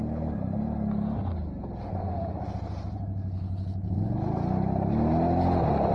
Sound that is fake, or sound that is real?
real